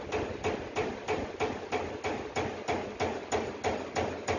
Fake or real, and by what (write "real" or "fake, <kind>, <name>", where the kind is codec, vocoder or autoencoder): real